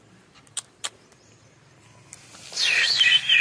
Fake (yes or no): no